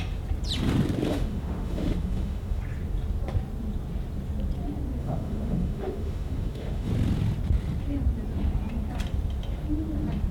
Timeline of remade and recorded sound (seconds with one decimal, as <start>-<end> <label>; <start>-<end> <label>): 0.0-1.1 recorded; 1.1-2.6 remade; 2.6-5.0 recorded; 5.0-6.9 remade; 6.9-10.3 recorded